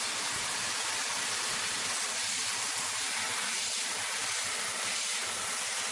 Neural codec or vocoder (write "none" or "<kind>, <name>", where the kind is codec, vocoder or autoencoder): none